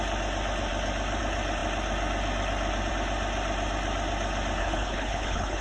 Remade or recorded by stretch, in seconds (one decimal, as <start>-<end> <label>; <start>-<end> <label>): 0.0-4.6 recorded; 4.6-5.6 remade